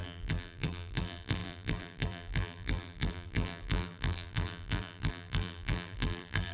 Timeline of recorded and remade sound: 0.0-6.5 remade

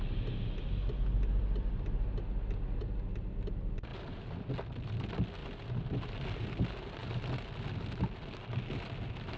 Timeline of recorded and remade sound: 0.0-1.4 recorded; 1.4-2.2 remade; 2.2-3.9 recorded; 3.9-4.5 remade; 4.5-5.4 recorded; 5.4-6.4 remade; 6.4-9.4 recorded

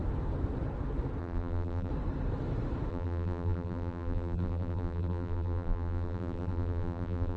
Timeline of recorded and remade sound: 0.0-1.2 recorded; 1.2-1.9 remade; 1.9-2.9 recorded; 2.9-7.4 remade

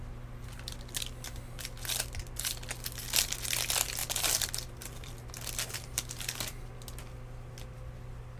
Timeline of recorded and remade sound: 0.0-4.0 recorded; 4.0-5.2 remade; 5.2-8.4 recorded

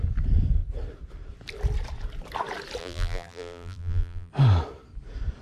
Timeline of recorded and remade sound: 0.0-2.8 recorded; 2.8-4.3 remade; 4.3-5.4 recorded

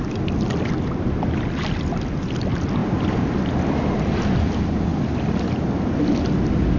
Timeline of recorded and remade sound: 0.0-2.8 recorded; 2.8-3.5 remade; 3.5-6.8 recorded

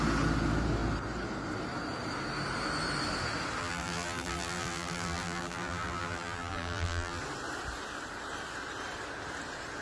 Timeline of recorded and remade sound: 0.0-3.6 recorded; 3.6-7.2 remade; 7.2-9.8 recorded